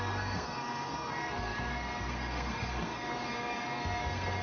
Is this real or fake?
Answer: fake